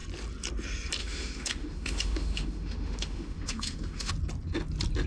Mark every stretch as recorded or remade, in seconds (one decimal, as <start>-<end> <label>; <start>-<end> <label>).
0.0-1.0 recorded; 1.0-4.1 remade; 4.1-5.1 recorded